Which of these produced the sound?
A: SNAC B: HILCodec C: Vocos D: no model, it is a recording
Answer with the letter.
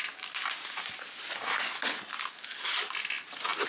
D